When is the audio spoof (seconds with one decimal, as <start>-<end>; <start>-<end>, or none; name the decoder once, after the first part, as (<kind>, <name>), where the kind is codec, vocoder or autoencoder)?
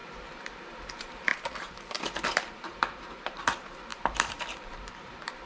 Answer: 0.0-5.5 (vocoder, BigVGAN v2)